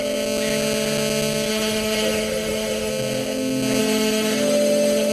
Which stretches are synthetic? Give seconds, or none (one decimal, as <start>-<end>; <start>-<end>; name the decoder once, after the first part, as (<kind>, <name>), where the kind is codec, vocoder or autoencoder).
1.5-2.9 (autoencoder, DAC-VAE); 3.8-5.1